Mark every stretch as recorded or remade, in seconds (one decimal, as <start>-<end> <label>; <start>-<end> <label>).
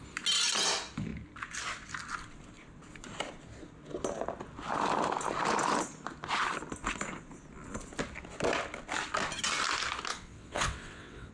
0.0-10.1 recorded; 10.1-11.3 remade